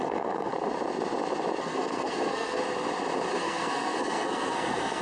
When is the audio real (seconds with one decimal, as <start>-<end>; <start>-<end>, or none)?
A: 0.5-1.6; 2.6-3.3